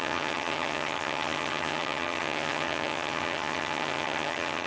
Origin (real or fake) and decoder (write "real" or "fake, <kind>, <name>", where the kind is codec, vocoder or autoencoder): fake, vocoder, HiFi-GAN